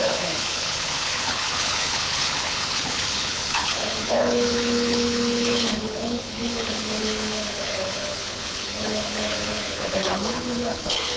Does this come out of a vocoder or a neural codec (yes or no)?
yes